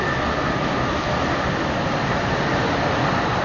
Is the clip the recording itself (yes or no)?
yes